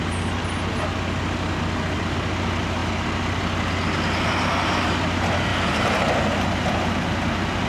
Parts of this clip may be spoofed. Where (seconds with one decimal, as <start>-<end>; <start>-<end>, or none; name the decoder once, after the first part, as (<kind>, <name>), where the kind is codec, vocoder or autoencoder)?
5.5-6.1 (vocoder, BigVGAN v2)